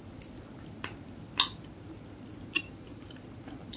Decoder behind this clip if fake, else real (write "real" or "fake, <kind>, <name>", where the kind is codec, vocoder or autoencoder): real